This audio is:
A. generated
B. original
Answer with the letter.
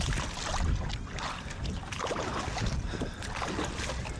B